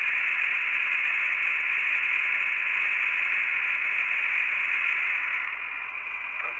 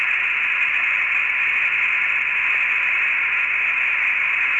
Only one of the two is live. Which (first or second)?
second